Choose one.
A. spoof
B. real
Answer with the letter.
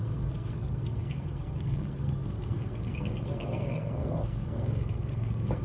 A